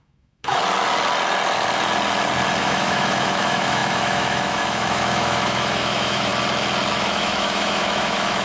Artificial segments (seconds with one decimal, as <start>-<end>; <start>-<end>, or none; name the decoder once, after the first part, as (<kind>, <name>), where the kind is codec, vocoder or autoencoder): 0.0-0.6 (autoencoder, DAC-VAE); 2.6-6.3; 6.9-8.4

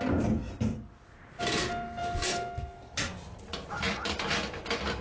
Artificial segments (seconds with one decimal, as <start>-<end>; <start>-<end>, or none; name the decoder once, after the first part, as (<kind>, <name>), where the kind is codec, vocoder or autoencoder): none

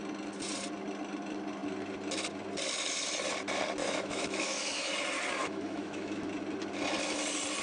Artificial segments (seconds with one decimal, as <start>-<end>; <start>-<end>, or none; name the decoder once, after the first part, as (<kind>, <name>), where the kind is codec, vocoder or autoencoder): 3.8-4.9 (autoencoder, DAC-VAE); 5.4-6.3

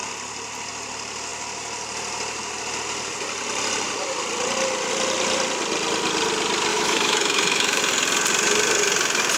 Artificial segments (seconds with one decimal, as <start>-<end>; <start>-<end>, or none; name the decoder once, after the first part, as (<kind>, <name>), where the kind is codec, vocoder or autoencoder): 6.7-7.8 (autoencoder, DAC-VAE)

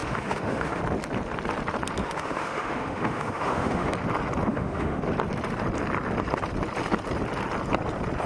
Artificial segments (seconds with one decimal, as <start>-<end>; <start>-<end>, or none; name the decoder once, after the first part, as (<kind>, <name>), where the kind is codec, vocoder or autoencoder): 0.0-0.8 (autoencoder, DAC-VAE); 2.0-3.9; 4.5-5.0

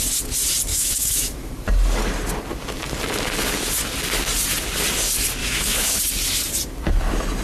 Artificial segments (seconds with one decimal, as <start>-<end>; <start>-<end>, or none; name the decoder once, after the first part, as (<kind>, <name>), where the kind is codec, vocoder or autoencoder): 0.7-1.5 (autoencoder, DAC-VAE); 5.4-6.0

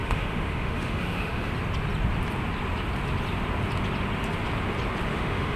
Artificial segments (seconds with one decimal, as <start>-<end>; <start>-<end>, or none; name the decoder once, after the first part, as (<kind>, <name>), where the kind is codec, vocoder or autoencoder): 0.0-1.5 (autoencoder, DAC-VAE); 5.1-5.6

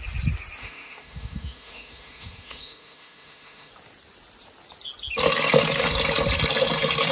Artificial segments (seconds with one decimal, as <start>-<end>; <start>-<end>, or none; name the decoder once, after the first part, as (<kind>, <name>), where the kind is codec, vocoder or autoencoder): 0.6-3.7 (autoencoder, DAC-VAE)